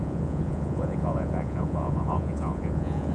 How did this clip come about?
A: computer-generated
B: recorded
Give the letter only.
A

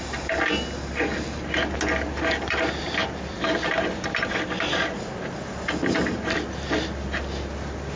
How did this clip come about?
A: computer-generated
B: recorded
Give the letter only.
B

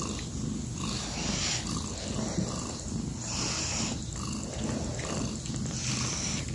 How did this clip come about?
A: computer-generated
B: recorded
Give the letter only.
B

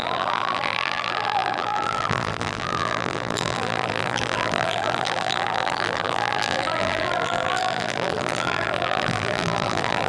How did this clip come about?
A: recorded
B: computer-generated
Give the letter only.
B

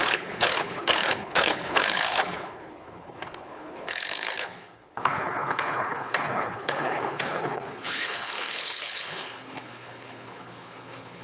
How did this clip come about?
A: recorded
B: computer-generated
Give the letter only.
B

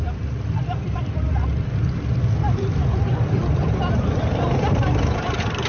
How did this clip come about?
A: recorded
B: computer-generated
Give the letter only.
B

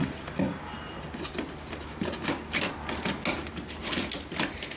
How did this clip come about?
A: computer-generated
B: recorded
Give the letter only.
B